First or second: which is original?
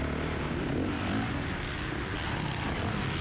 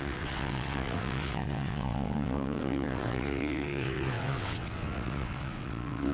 first